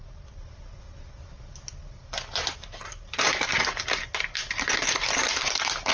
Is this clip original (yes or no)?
yes